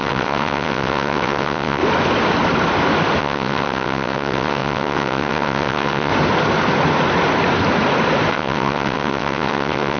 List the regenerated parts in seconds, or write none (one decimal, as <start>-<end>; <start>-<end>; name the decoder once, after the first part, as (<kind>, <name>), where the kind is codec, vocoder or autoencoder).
0.0-1.8 (vocoder, WaveNeXt); 3.2-6.1; 8.3-10.0